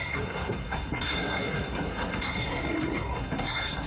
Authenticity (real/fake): fake